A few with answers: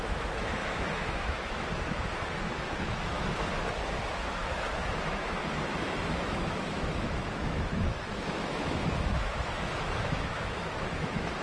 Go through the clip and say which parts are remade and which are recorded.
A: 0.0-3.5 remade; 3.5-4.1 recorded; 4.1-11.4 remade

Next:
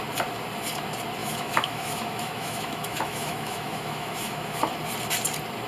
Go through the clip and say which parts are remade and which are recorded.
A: 0.0-1.2 recorded; 1.2-4.6 remade; 4.6-5.7 recorded

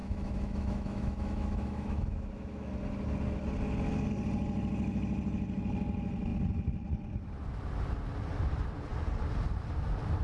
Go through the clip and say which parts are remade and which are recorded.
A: 0.0-2.7 remade; 2.7-10.2 recorded

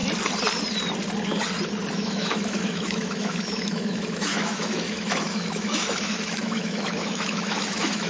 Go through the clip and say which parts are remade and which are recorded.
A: 0.0-1.9 recorded; 1.9-8.1 remade

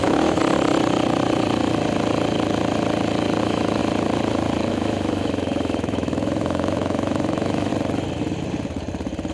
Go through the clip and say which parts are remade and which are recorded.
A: 0.0-0.4 remade; 0.4-3.4 recorded; 3.4-3.8 remade; 3.8-4.7 recorded; 4.7-7.7 remade; 7.7-9.3 recorded

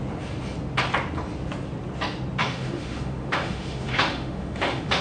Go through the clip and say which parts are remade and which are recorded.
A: 0.0-2.4 recorded; 2.4-5.0 remade

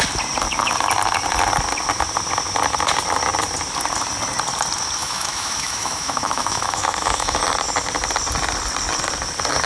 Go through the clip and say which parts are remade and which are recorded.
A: 0.0-5.0 recorded; 5.0-7.4 remade; 7.4-9.7 recorded